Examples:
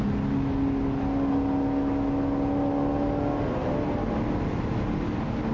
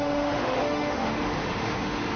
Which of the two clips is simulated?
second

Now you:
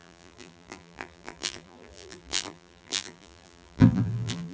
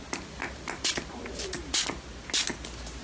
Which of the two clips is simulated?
first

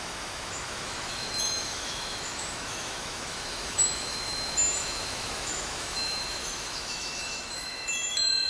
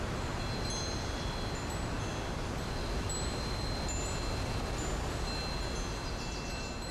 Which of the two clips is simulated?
first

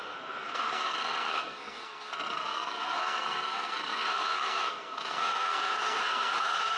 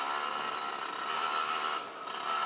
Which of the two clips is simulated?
first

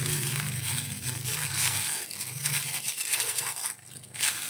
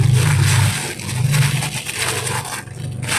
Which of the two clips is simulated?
first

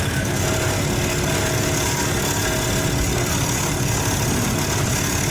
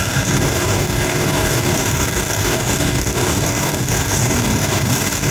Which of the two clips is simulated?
second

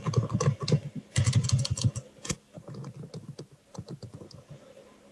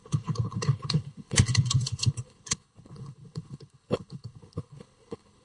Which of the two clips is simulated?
second